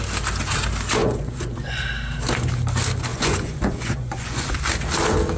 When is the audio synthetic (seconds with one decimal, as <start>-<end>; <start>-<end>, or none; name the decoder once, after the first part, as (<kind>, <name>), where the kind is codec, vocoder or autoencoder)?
1.0-1.8 (vocoder, Vocos); 3.1-4.6